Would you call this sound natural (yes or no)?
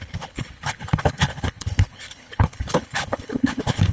no